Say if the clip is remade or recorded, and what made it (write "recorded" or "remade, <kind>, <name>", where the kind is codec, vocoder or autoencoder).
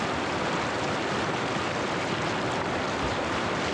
recorded